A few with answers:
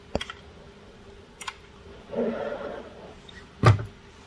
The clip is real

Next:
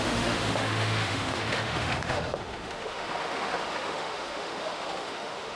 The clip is fake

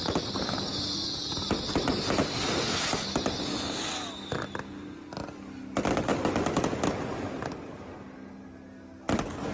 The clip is real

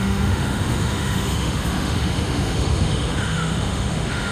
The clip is fake